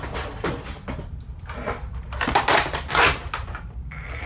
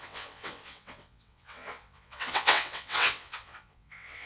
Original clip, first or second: first